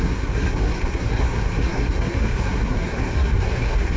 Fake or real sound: fake